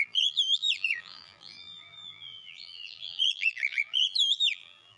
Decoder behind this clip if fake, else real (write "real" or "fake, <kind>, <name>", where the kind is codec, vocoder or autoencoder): fake, vocoder, BigVGAN v2